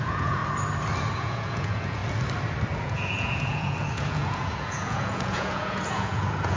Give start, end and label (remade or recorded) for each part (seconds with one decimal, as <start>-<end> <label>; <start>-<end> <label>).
0.0-0.4 remade; 0.4-1.1 recorded; 1.1-2.0 remade; 2.0-2.8 recorded; 2.8-6.6 remade